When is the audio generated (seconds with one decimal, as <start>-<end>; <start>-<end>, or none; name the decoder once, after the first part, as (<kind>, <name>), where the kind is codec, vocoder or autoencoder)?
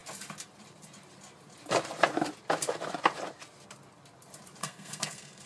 4.6-5.5 (codec, SNAC)